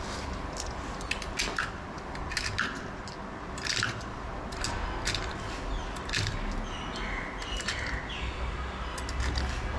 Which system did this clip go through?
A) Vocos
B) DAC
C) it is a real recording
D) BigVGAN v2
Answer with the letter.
C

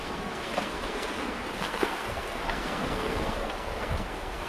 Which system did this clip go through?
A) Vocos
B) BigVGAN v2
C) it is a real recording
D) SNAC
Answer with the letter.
D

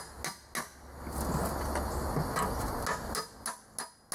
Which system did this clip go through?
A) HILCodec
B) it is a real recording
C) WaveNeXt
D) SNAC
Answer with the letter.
B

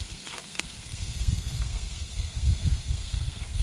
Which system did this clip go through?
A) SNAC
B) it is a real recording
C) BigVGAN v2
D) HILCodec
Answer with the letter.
A